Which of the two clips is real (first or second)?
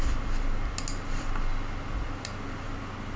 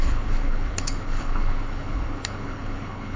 first